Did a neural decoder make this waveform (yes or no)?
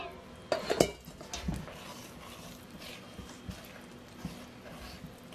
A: no